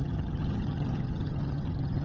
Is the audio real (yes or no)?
no